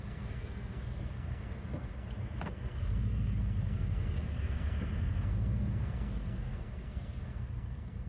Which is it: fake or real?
fake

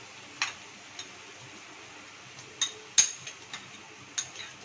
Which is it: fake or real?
real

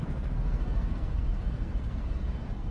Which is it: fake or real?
fake